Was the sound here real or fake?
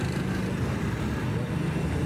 real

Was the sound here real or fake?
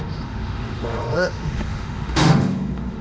fake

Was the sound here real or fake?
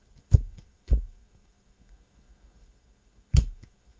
fake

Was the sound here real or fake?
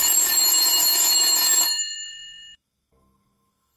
fake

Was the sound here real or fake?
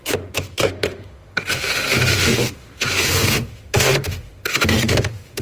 fake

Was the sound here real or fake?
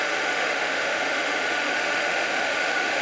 fake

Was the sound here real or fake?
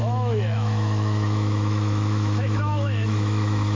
fake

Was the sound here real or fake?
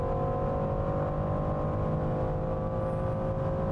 real